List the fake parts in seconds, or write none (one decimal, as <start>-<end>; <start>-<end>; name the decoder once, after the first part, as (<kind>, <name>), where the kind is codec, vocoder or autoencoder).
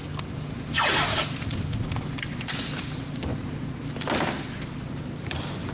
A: none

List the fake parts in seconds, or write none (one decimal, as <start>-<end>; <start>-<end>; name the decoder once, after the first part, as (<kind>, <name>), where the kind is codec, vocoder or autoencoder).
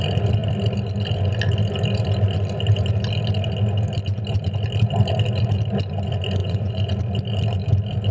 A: 6.4-6.9 (vocoder, Vocos)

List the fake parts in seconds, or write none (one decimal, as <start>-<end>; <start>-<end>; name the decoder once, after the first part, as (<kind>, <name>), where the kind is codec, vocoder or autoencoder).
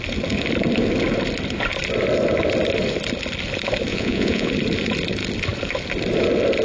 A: 3.9-4.5 (vocoder, Vocos)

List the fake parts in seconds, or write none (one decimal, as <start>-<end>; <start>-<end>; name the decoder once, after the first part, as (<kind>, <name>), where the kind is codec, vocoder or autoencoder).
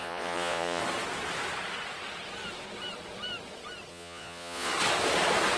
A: 0.0-0.8 (vocoder, Vocos); 3.9-4.7